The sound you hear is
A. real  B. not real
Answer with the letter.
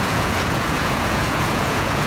B